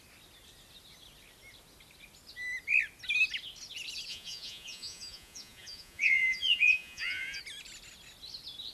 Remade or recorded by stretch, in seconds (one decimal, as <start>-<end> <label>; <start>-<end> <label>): 0.0-4.1 recorded; 4.1-7.4 remade; 7.4-8.7 recorded